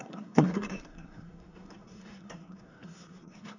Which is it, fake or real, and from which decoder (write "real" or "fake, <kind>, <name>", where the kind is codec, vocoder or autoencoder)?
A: fake, codec, SNAC